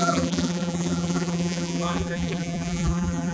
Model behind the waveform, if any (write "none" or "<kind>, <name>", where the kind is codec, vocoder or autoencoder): vocoder, BigVGAN v2